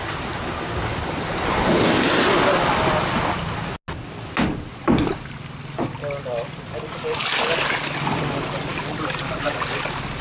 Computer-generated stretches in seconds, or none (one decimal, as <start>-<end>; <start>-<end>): none